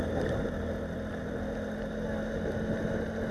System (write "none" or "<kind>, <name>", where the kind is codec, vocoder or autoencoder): none